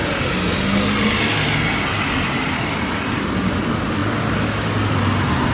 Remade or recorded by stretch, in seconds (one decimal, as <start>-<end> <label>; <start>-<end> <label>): 0.0-5.5 recorded